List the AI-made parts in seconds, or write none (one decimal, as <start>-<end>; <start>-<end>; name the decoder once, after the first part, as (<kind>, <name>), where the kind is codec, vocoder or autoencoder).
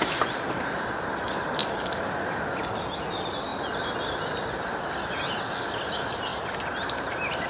3.5-4.0 (vocoder, BigVGAN v2); 6.3-7.5